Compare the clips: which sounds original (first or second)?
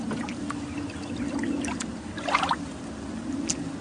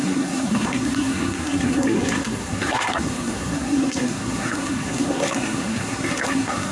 first